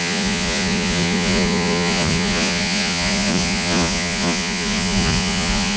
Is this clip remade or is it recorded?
remade